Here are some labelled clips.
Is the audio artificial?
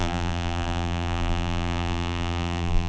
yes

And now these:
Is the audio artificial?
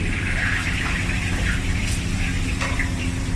yes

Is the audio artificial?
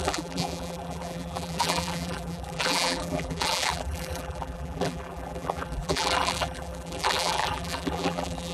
yes